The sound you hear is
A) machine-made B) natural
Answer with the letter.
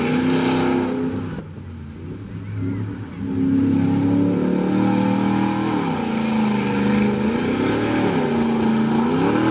B